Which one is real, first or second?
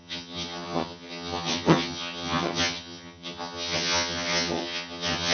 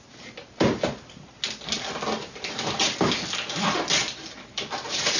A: second